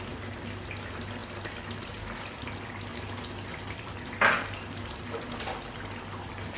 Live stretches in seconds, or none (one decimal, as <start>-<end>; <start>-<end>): 0.0-6.6